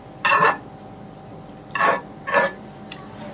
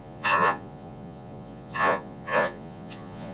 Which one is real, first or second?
first